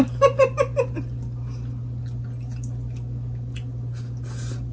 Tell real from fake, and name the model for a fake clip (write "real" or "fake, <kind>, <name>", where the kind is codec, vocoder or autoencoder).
real